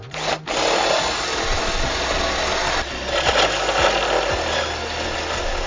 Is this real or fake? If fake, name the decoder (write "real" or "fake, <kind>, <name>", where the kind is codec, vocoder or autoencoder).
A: real